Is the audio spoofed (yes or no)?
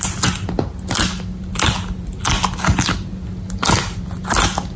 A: no